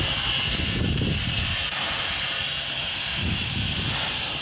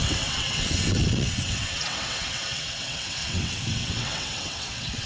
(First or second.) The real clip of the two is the first